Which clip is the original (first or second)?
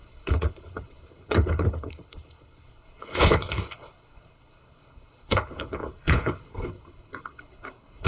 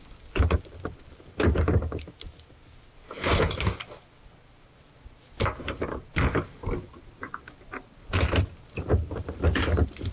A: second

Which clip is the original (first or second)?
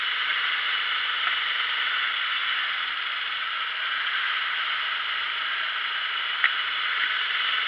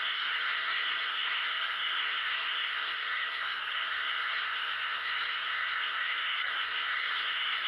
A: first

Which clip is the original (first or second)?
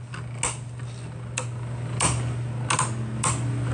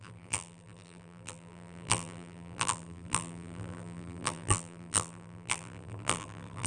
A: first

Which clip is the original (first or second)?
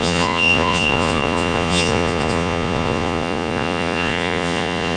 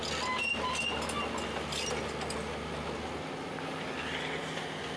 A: second